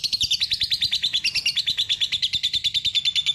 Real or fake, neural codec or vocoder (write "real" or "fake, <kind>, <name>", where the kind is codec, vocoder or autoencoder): real